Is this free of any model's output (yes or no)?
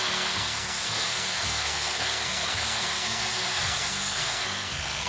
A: no